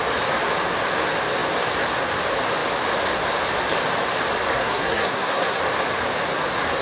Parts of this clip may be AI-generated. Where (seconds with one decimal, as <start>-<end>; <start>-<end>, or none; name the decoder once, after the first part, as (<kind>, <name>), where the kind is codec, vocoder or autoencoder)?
4.5-5.6 (codec, SNAC)